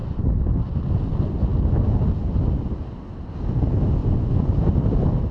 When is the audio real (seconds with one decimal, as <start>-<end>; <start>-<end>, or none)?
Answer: 0.0-4.0; 4.5-5.3